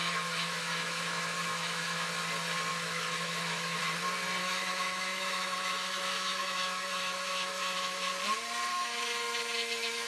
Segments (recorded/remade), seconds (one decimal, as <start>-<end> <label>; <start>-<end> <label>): 0.0-2.1 remade; 2.1-2.7 recorded; 2.7-3.8 remade; 3.8-4.4 recorded; 4.4-8.1 remade; 8.1-8.7 recorded; 8.7-10.1 remade